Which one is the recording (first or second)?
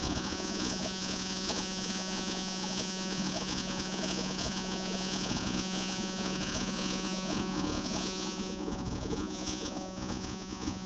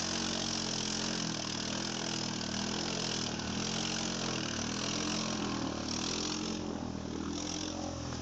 second